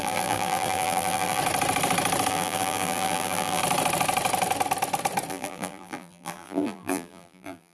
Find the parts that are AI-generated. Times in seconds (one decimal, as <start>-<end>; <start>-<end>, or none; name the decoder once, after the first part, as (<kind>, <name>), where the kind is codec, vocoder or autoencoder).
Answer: 0.0-1.4 (vocoder, BigVGAN v2); 2.3-3.6; 5.3-7.7